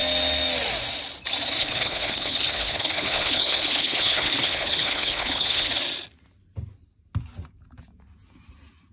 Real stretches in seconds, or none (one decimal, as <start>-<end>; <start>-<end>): 0.0-1.6; 5.7-8.9